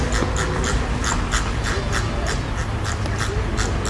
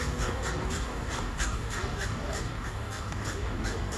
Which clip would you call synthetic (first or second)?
second